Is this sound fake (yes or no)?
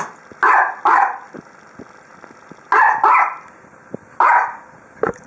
no